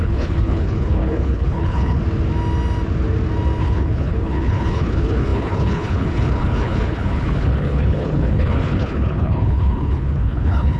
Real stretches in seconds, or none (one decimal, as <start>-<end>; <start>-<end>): 2.0-3.6